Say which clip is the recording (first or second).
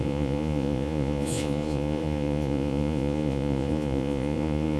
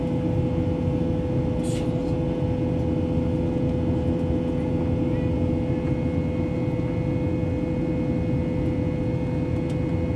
second